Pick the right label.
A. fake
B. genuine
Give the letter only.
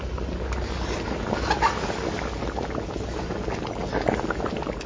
B